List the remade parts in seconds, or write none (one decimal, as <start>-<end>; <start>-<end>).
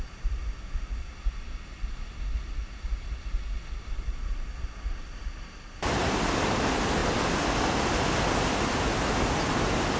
none